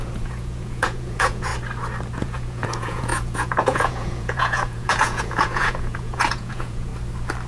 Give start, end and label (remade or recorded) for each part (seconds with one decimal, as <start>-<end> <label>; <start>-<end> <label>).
0.0-1.5 remade; 1.5-2.2 recorded; 2.2-6.9 remade; 6.9-7.5 recorded